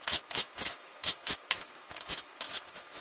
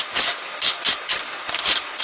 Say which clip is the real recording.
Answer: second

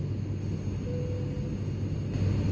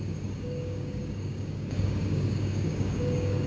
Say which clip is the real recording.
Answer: first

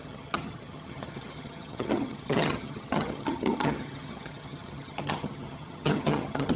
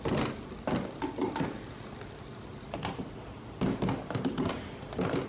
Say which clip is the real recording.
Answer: second